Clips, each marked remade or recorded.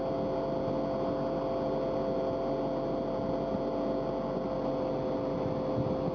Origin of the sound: recorded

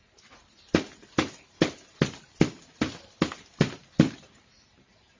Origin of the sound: recorded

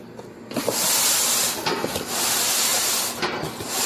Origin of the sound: recorded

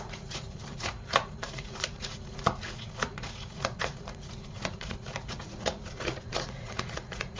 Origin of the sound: remade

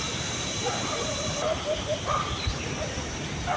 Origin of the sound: remade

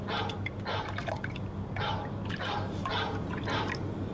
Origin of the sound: recorded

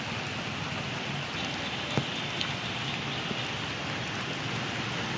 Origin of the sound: recorded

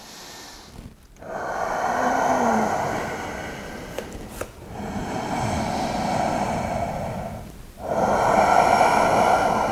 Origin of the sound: recorded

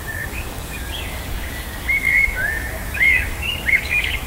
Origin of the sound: remade